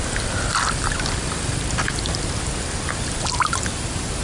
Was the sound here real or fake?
real